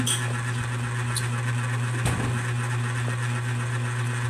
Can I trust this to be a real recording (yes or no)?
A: no